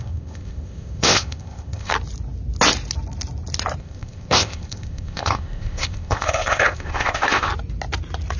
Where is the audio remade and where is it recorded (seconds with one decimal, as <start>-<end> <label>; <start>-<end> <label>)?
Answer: 0.0-1.9 remade; 1.9-3.8 recorded; 3.8-7.5 remade; 7.5-8.4 recorded